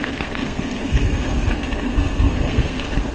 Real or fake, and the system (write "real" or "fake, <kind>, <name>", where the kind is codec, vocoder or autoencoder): fake, codec, SNAC